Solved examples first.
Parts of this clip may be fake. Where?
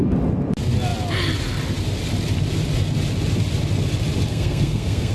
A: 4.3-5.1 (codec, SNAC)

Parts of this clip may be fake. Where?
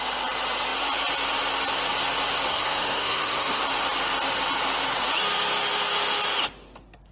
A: 2.5-3.6 (codec, SNAC)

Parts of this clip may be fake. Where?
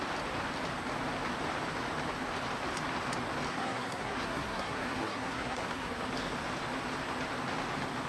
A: 3.5-6.1 (codec, SNAC)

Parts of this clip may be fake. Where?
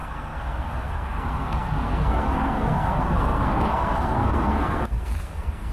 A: 0.0-5.7 (codec, SNAC)